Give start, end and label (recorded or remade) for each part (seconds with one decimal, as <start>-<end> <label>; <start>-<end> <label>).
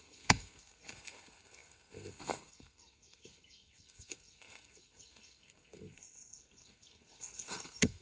0.0-8.0 remade